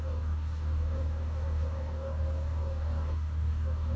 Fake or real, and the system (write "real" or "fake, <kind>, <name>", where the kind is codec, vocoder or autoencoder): fake, codec, DAC